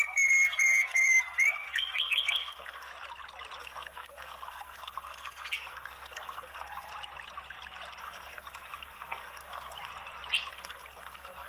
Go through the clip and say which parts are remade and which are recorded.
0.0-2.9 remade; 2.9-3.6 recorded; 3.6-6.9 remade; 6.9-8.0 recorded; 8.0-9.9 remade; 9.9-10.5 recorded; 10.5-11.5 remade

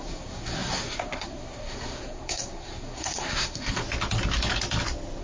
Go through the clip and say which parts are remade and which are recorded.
0.0-3.8 remade; 3.8-5.2 recorded

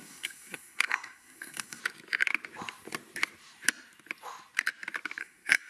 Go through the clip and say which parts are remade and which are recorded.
0.0-1.8 remade; 1.8-5.2 recorded; 5.2-5.7 remade

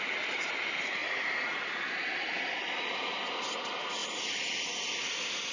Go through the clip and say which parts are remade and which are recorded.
0.0-5.5 recorded

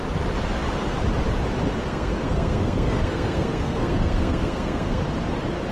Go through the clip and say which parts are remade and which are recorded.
0.0-1.8 recorded; 1.8-5.0 remade; 5.0-5.7 recorded